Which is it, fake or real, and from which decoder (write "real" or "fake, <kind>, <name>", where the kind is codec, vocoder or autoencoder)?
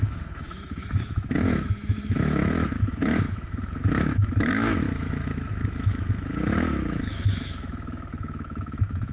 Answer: fake, autoencoder, DAC-VAE